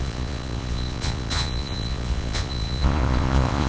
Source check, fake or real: fake